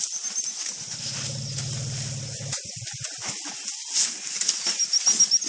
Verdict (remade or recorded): recorded